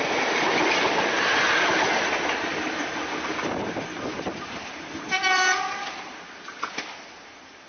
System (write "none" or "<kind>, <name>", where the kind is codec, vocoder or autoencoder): none